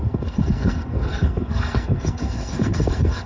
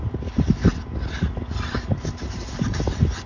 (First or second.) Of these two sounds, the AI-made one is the first